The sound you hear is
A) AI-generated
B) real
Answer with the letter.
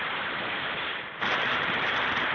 A